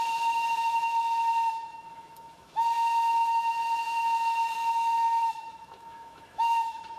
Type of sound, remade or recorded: remade